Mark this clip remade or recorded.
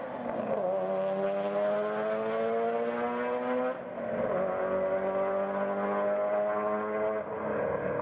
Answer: recorded